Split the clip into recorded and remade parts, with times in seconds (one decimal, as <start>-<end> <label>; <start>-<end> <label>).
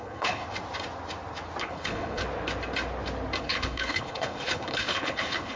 0.0-0.4 remade; 0.4-1.6 recorded; 1.6-2.2 remade; 2.2-3.4 recorded; 3.4-5.6 remade